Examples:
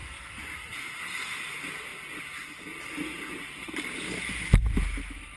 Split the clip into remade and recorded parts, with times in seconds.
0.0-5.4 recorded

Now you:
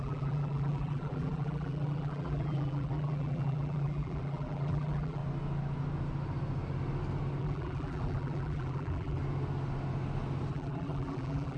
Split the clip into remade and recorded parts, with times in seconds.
0.0-5.2 remade; 5.2-7.4 recorded; 7.4-9.2 remade; 9.2-10.5 recorded; 10.5-11.6 remade

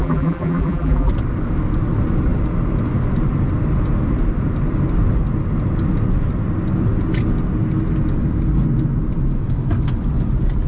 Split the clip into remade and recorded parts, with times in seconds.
0.0-1.1 remade; 1.1-10.7 recorded

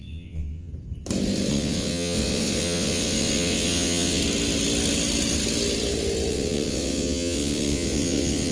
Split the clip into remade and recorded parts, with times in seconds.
0.0-0.7 remade; 0.7-1.5 recorded; 1.5-4.2 remade; 4.2-6.3 recorded; 6.3-8.5 remade

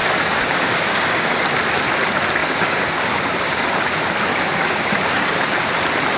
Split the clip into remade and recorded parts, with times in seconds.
0.0-1.4 remade; 1.4-2.4 recorded; 2.4-3.6 remade; 3.6-4.3 recorded; 4.3-5.6 remade; 5.6-6.2 recorded